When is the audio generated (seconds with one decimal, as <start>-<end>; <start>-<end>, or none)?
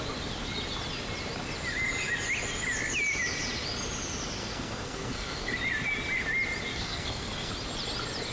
4.4-5.5; 6.7-7.5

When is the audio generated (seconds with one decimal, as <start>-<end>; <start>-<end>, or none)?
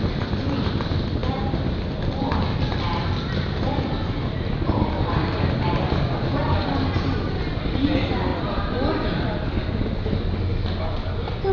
none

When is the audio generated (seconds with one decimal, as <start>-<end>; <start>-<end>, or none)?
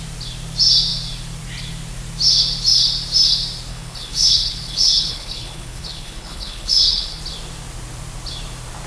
3.7-7.2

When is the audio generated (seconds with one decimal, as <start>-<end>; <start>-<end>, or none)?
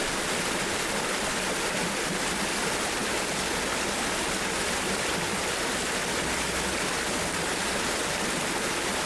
none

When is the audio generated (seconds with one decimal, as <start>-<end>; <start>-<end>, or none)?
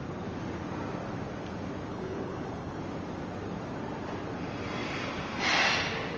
1.9-2.8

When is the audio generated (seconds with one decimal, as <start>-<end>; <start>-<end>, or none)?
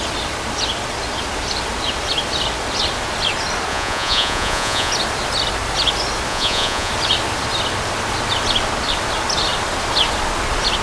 3.7-4.9; 6.3-6.9